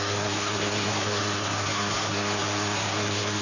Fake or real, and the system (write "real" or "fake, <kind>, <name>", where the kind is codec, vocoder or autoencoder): fake, codec, SNAC